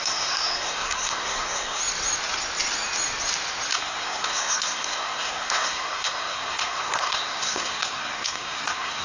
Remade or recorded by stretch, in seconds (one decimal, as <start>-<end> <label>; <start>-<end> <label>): 0.0-1.8 remade; 1.8-3.7 recorded; 3.7-9.0 remade